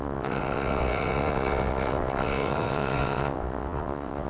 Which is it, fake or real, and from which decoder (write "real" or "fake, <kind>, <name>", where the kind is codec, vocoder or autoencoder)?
fake, vocoder, WaveNeXt